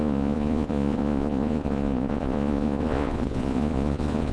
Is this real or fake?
fake